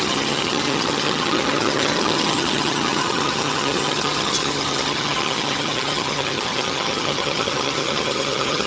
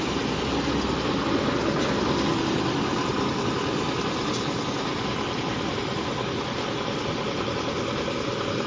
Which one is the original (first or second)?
second